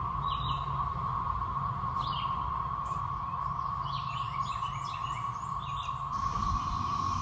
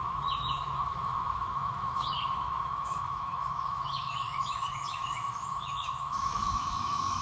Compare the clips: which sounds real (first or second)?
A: first